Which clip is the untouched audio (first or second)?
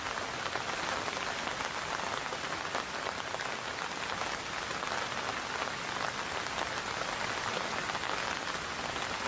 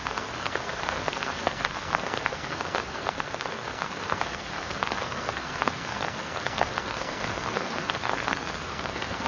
first